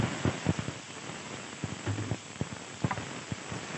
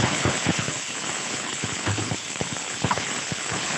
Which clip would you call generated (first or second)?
second